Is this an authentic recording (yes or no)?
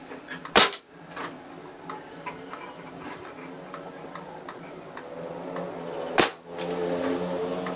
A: yes